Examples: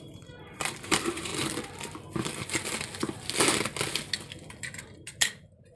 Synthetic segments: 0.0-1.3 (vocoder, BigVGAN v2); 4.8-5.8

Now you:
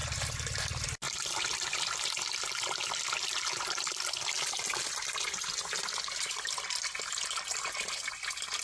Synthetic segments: none

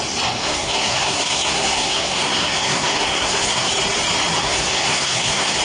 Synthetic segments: 0.4-3.7 (codec, SNAC); 4.4-5.6